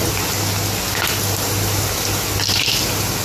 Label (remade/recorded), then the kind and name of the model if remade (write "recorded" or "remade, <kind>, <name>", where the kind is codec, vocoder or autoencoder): recorded